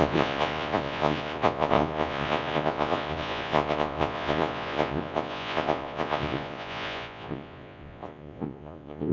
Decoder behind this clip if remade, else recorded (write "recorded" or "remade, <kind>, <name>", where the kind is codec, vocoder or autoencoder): remade, vocoder, Vocos